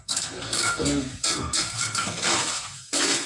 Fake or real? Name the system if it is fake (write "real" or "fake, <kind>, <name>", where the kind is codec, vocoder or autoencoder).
fake, codec, SNAC